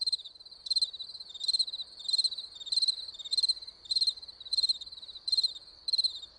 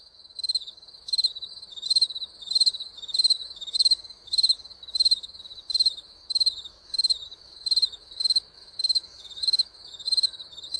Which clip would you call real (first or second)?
first